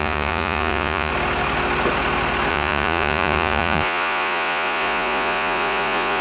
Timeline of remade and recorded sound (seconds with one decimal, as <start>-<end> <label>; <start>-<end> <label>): 0.0-1.1 remade; 1.1-2.5 recorded; 2.5-6.2 remade